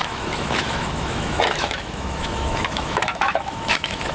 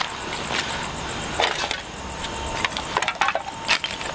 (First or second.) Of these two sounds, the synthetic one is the first